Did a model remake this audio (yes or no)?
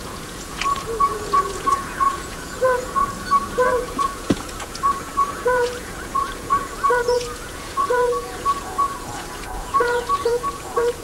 yes